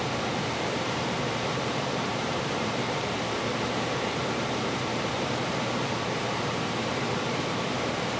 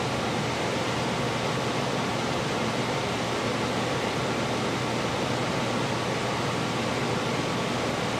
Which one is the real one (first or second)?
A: second